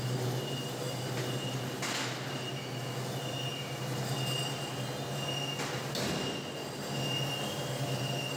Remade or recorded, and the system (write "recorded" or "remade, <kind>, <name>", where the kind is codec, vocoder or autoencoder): recorded